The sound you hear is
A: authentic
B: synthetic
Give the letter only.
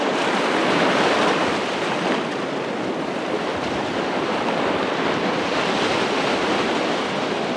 A